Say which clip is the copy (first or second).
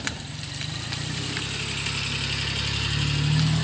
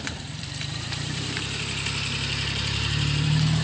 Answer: second